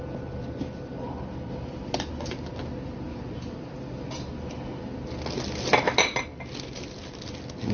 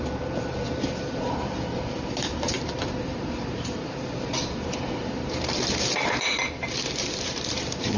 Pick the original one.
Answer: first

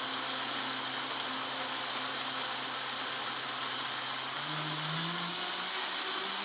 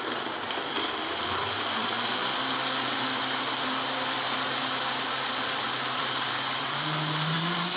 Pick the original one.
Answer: first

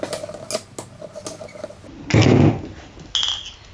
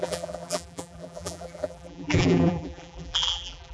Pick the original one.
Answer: first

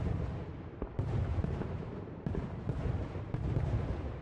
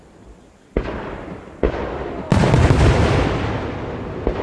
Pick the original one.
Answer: second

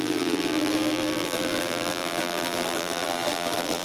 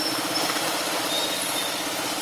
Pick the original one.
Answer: second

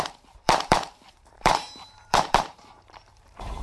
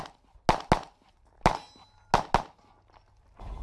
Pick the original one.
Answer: second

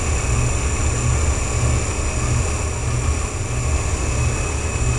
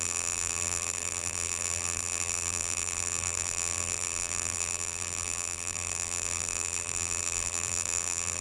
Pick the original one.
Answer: first